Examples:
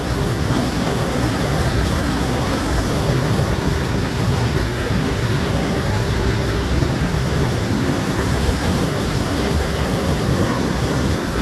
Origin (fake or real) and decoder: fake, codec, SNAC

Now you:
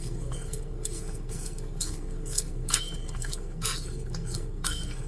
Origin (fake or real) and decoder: fake, codec, SNAC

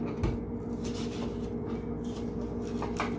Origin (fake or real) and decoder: real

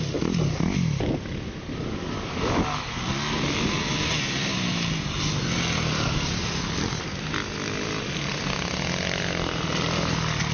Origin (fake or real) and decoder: real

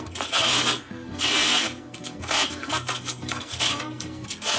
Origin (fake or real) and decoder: fake, codec, SNAC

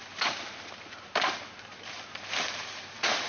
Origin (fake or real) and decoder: real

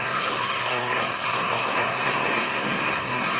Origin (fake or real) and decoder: fake, codec, SNAC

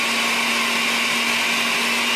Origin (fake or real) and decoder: real